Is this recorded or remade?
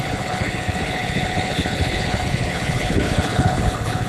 remade